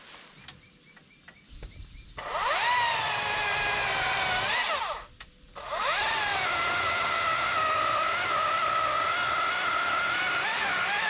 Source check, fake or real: real